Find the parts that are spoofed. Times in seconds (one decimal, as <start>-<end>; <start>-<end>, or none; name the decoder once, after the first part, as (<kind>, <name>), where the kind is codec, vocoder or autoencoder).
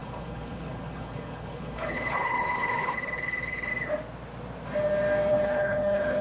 0.0-3.7 (codec, HILCodec); 5.3-6.2